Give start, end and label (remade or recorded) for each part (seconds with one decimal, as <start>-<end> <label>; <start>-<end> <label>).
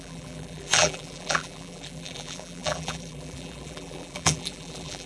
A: 0.0-5.1 remade